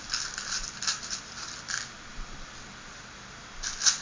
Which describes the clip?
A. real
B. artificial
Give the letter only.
A